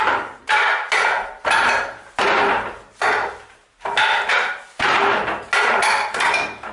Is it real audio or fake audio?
real